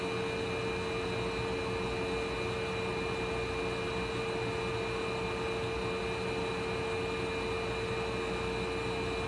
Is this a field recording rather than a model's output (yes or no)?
yes